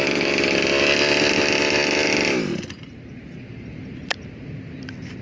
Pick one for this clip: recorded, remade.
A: recorded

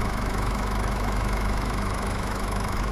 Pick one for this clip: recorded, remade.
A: remade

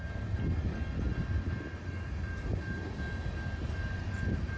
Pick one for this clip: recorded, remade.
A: recorded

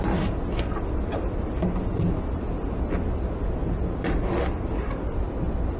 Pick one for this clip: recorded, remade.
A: recorded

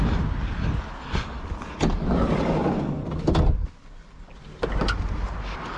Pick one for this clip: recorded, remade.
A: recorded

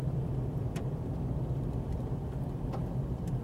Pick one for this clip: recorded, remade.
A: recorded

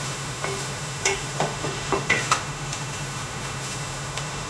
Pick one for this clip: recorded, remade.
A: remade